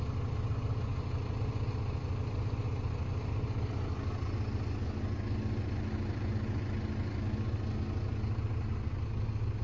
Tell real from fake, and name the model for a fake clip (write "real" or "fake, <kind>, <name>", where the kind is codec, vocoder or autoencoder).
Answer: real